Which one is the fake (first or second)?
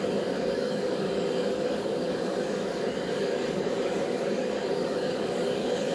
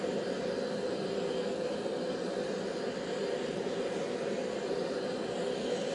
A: first